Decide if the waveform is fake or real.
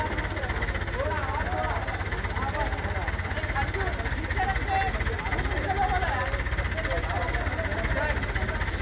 real